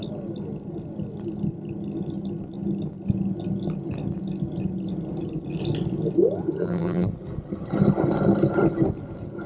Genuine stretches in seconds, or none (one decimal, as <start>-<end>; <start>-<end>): 0.0-6.6; 7.1-9.5